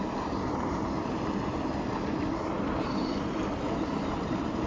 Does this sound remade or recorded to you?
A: recorded